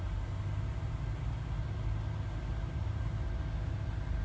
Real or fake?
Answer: real